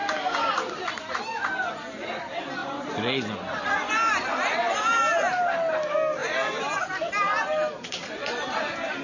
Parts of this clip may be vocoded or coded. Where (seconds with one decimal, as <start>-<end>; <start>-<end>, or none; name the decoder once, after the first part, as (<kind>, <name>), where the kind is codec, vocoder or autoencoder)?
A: 0.0-0.5 (codec, DAC)